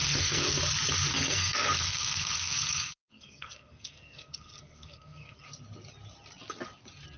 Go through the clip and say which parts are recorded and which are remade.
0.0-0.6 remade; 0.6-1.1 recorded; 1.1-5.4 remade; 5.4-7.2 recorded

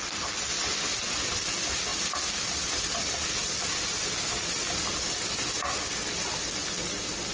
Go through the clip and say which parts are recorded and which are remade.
0.0-7.3 recorded

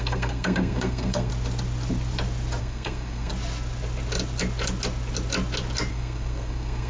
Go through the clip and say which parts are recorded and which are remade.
0.0-1.3 remade; 1.3-2.6 recorded; 2.6-3.3 remade; 3.3-5.9 recorded; 5.9-6.9 remade

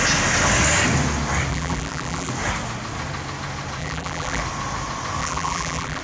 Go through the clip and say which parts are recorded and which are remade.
0.0-1.5 recorded; 1.5-2.3 remade; 2.3-3.8 recorded; 3.8-4.4 remade; 4.4-5.2 recorded; 5.2-6.0 remade

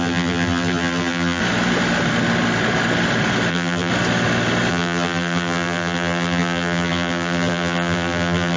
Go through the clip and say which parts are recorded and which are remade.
0.0-1.4 remade; 1.4-3.5 recorded; 3.5-3.9 remade; 3.9-4.7 recorded; 4.7-8.6 remade

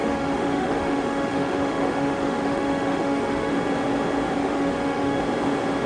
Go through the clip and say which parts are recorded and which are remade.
0.0-3.5 remade; 3.5-4.4 recorded; 4.4-5.2 remade; 5.2-5.9 recorded

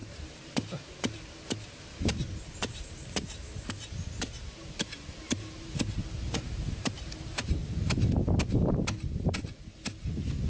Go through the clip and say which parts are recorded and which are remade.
0.0-7.6 remade; 7.6-10.5 recorded